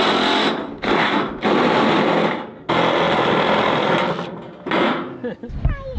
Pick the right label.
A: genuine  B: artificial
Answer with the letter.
A